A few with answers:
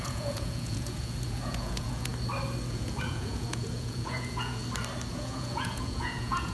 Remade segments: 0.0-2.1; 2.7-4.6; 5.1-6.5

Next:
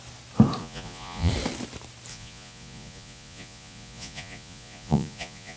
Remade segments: 0.6-1.3; 2.1-5.6

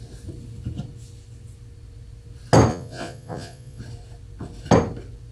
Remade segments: 2.7-3.8